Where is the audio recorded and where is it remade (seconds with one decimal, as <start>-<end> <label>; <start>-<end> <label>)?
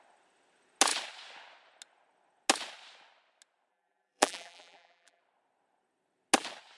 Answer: 0.0-3.7 recorded; 3.7-5.2 remade; 5.2-6.8 recorded